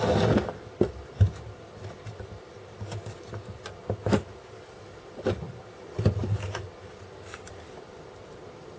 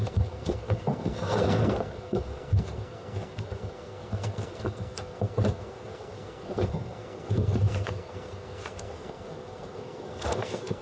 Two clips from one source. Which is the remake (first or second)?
second